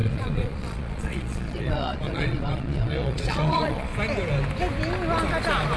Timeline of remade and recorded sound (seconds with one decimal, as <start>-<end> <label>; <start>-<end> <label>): 0.0-3.9 remade; 3.9-5.8 recorded